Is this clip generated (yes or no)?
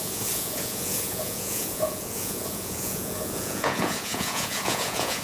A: yes